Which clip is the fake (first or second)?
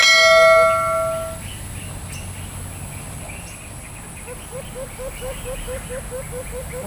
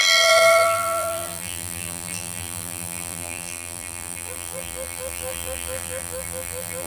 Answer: second